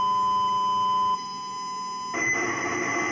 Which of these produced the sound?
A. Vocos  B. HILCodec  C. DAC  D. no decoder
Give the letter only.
D